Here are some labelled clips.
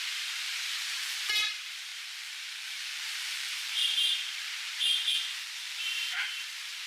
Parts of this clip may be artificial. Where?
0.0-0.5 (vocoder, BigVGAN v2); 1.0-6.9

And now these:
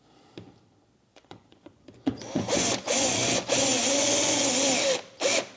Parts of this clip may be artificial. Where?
1.1-4.5 (vocoder, Vocos)

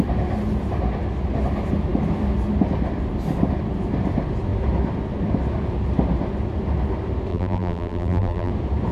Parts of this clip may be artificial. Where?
7.3-8.5 (vocoder, BigVGAN v2)